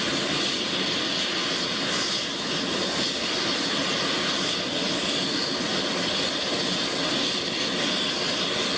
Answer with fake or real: real